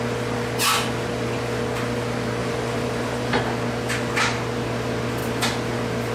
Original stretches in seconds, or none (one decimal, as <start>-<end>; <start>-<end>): 0.0-2.4; 3.4-6.1